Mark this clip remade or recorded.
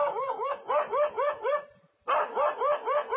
recorded